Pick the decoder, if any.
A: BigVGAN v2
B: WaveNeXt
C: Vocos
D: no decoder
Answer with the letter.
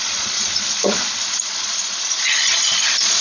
C